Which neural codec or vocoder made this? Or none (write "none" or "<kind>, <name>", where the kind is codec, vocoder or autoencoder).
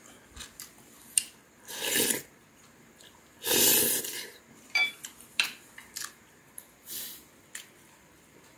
vocoder, BigVGAN v2